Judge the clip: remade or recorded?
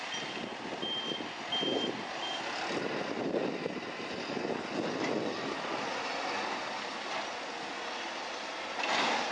recorded